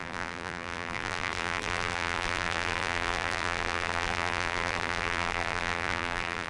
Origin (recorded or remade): remade